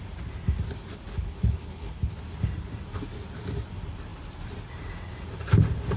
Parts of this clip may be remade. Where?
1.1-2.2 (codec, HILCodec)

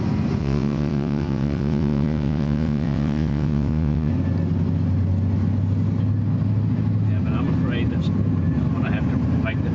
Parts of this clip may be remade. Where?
0.4-4.1 (vocoder, WaveNeXt)

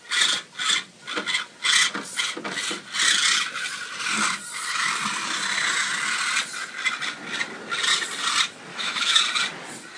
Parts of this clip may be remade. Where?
8.7-9.2 (autoencoder, DAC-VAE)

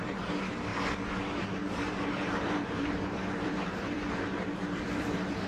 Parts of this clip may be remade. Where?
0.0-0.7 (vocoder, BigVGAN v2); 1.2-5.5

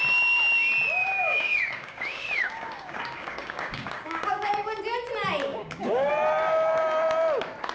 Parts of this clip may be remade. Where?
1.0-4.8 (codec, DAC); 5.5-6.1

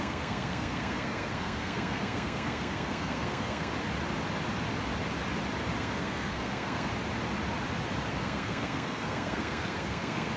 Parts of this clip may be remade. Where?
0.0-3.7 (codec, SNAC); 5.8-6.9; 8.1-10.4

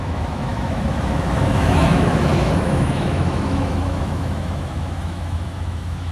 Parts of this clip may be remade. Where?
0.0-6.1 (autoencoder, DAC-VAE)

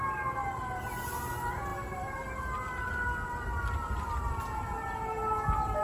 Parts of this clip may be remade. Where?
none